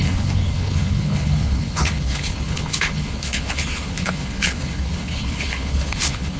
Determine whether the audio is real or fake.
fake